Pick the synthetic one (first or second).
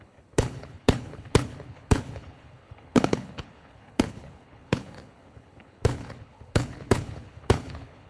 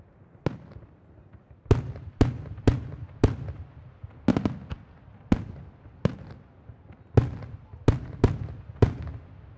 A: first